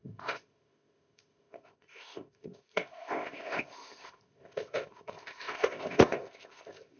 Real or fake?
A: fake